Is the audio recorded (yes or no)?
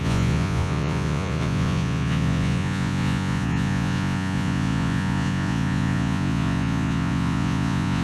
no